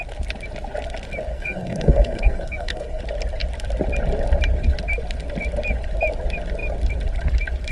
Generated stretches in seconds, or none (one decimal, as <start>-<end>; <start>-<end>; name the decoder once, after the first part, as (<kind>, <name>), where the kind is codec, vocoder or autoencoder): 1.3-3.0 (codec, SNAC)